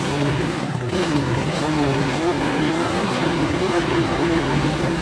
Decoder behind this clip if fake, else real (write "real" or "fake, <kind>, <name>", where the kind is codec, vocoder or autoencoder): fake, codec, SNAC